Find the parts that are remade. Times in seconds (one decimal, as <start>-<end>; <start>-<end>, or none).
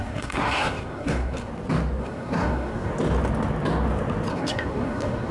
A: 0.0-1.5; 2.0-2.9; 4.3-5.3